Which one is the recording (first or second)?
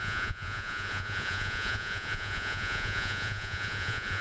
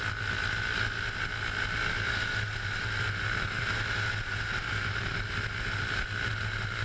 second